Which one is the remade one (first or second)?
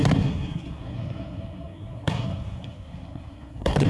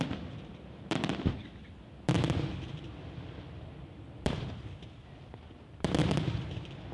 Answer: first